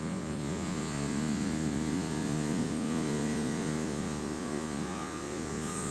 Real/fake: fake